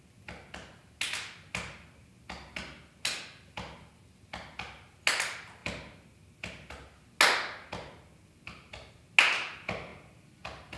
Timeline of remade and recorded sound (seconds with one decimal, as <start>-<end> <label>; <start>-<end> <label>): 0.0-10.8 recorded